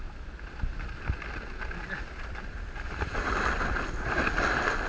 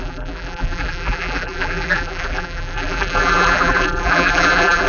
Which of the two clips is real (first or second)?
first